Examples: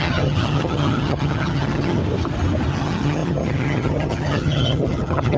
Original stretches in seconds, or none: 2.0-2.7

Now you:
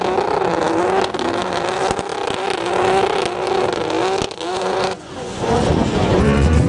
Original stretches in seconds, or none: 0.0-4.5

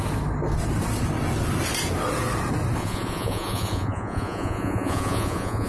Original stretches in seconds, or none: 0.0-2.8

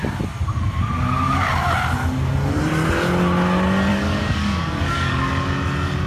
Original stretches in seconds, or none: 0.0-3.9; 5.2-6.1

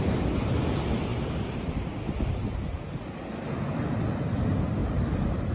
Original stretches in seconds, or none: 0.0-4.8